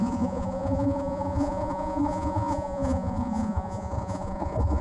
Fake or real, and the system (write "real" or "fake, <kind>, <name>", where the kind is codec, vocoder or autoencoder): fake, vocoder, Vocos